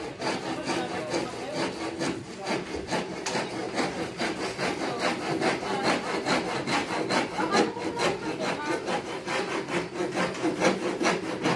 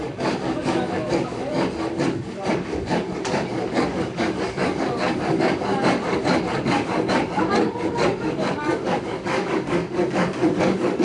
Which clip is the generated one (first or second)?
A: second